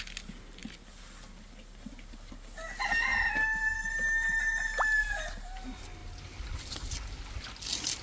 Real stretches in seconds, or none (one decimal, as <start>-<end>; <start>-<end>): 0.0-8.0